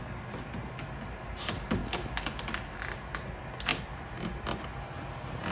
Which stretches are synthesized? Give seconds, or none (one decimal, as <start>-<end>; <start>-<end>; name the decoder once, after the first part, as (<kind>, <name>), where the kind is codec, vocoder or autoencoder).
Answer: none